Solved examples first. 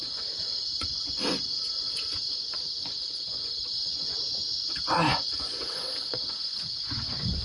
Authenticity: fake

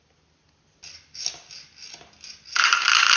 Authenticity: real